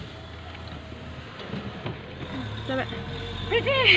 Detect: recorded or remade recorded